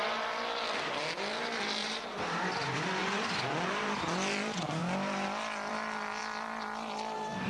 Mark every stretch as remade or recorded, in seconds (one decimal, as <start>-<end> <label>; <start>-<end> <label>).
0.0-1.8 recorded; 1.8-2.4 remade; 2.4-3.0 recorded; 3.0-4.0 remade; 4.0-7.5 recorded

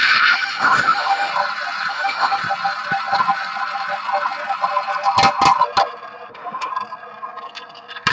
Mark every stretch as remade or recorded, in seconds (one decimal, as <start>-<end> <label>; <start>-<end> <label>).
0.0-1.3 remade; 1.3-1.9 recorded; 1.9-2.4 remade; 2.4-6.3 recorded; 6.3-6.7 remade; 6.7-8.1 recorded

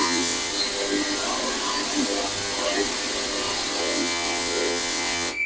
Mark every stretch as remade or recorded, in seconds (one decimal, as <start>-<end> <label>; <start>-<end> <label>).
0.0-0.5 remade; 0.5-3.8 recorded; 3.8-5.5 remade

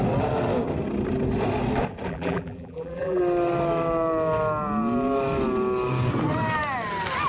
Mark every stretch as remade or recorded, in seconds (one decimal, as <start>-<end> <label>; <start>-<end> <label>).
0.0-2.1 recorded; 2.1-3.2 remade; 3.2-7.3 recorded

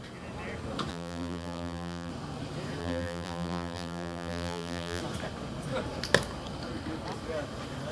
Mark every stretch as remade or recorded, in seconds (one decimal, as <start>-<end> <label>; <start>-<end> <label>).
0.0-0.9 recorded; 0.9-2.1 remade; 2.1-2.8 recorded; 2.8-5.0 remade; 5.0-7.9 recorded

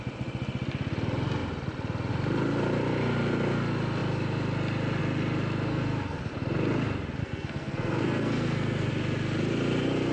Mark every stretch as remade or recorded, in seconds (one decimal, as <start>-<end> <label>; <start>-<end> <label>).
0.0-5.7 recorded; 5.7-6.2 remade; 6.2-7.2 recorded; 7.2-8.9 remade; 8.9-10.1 recorded

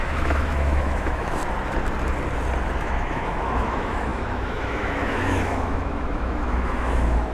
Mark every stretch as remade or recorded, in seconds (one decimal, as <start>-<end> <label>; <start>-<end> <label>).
0.0-1.4 remade; 1.4-2.8 recorded; 2.8-7.3 remade